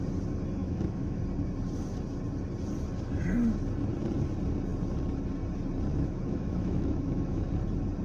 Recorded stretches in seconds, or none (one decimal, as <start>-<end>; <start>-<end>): 0.0-0.6; 1.2-5.9; 7.5-8.0